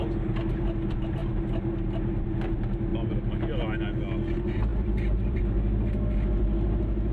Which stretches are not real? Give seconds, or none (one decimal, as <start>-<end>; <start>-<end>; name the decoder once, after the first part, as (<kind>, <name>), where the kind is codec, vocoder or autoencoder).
4.7-5.4 (vocoder, BigVGAN v2)